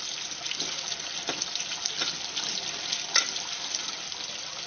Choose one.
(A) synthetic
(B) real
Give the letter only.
B